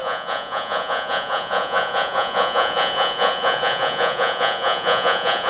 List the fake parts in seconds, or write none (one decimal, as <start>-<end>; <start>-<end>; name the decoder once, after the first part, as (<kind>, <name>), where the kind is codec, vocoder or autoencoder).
0.0-5.5 (vocoder, Vocos)